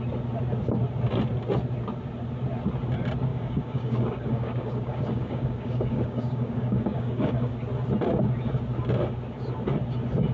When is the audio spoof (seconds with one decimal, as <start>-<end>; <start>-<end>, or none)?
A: 3.3-7.5